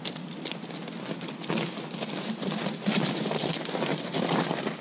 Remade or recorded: recorded